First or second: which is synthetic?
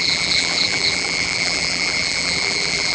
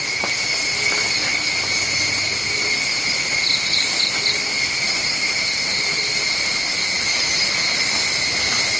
first